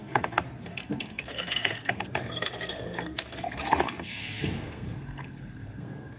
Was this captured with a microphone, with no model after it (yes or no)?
no